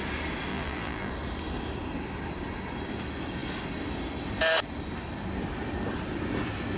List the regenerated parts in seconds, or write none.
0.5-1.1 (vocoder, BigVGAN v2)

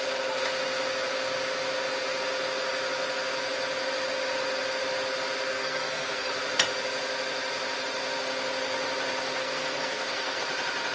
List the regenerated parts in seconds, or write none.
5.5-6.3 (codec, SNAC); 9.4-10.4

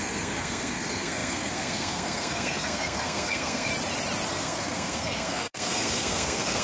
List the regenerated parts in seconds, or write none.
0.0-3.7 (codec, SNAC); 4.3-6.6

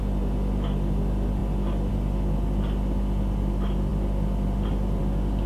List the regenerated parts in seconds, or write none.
none

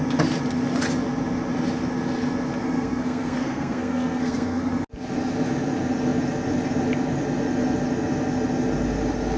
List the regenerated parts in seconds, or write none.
2.6-4.6 (codec, SNAC)

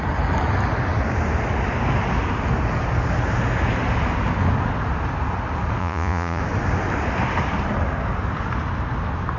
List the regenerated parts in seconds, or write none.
5.8-6.4 (vocoder, Vocos)